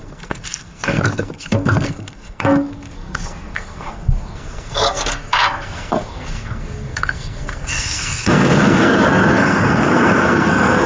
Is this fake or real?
fake